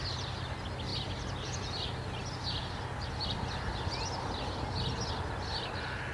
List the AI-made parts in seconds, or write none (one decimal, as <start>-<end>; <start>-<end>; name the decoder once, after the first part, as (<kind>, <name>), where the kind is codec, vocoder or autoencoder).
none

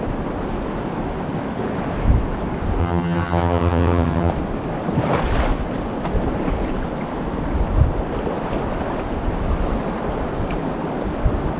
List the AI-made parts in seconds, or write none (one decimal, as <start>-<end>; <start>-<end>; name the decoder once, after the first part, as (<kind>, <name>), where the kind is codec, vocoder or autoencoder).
2.8-4.3 (vocoder, HiFi-GAN)

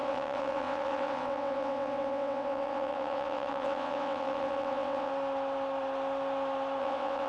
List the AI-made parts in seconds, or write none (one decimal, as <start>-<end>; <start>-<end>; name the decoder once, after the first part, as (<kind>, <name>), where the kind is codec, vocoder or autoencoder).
0.0-5.1 (vocoder, WaveNeXt); 6.8-7.3

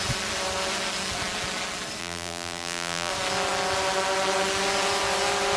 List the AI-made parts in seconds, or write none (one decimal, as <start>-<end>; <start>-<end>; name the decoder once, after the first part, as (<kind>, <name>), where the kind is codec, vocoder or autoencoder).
2.0-3.1 (vocoder, BigVGAN v2)